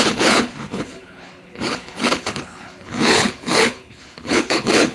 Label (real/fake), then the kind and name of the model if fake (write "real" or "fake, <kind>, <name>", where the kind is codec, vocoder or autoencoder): fake, codec, HILCodec